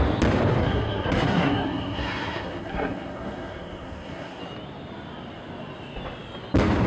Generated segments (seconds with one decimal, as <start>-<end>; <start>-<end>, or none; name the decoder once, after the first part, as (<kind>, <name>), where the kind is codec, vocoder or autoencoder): 0.5-4.4 (codec, SNAC)

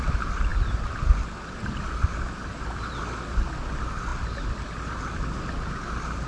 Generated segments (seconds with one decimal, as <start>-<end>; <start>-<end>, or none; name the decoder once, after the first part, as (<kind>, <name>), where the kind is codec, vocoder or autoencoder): none